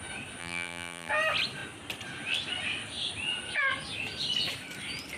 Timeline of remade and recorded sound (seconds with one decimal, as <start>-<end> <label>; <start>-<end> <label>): 0.0-0.4 recorded; 0.4-1.1 remade; 1.1-5.2 recorded